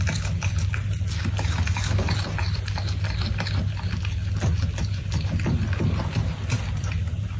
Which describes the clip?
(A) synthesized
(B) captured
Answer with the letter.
B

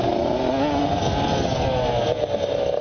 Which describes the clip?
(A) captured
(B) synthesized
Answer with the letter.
A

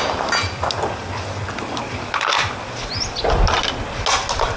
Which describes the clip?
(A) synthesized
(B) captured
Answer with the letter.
B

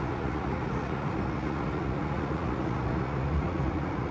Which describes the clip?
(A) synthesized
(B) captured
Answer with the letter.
A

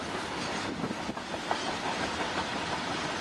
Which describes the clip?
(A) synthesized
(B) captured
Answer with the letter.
B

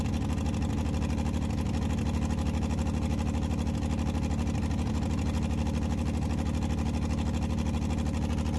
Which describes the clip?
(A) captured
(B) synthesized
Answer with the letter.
A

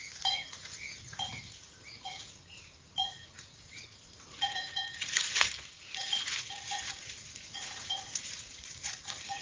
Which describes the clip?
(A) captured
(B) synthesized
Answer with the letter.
B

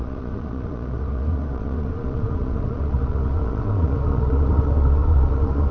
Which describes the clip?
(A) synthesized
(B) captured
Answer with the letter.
A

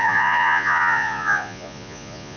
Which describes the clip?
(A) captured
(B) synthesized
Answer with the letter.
B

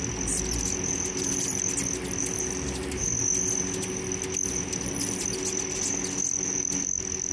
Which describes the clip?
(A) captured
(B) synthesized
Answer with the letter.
A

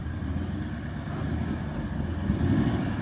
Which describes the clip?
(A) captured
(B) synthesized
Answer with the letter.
A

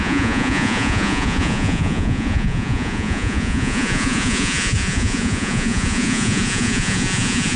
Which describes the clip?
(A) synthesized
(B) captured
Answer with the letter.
A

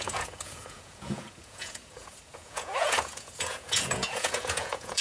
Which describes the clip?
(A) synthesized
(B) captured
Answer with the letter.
A